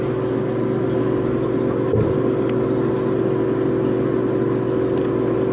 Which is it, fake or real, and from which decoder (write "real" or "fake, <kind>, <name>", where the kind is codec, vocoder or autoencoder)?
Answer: real